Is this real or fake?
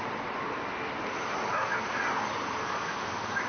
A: real